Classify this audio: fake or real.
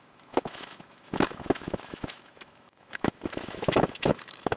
fake